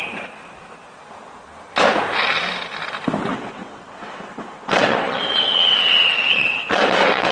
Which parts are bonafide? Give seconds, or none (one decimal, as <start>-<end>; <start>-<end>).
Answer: 0.0-3.3